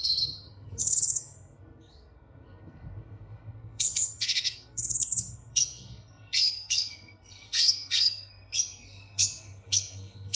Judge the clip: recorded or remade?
remade